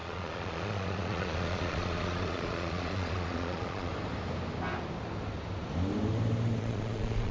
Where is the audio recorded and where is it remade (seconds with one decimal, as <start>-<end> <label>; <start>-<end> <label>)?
0.0-3.9 remade; 3.9-6.6 recorded; 6.6-7.3 remade